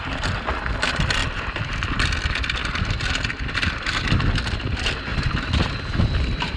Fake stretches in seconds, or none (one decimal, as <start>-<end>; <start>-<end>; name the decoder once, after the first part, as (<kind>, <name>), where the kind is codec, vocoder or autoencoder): 5.1-6.6 (vocoder, BigVGAN v2)